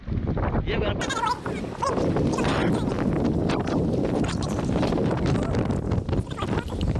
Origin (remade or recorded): recorded